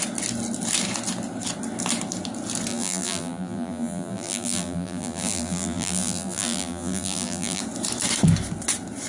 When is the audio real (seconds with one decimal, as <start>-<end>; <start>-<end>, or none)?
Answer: 0.0-2.7; 7.6-9.1